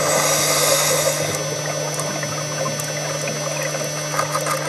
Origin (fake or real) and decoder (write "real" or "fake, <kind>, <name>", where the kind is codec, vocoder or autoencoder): real